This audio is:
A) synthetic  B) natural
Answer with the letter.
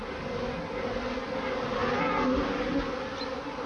B